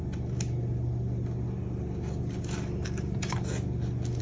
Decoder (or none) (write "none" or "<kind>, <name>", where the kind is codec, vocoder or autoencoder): none